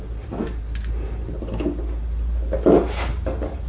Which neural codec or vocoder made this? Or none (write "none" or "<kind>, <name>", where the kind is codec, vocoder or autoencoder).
none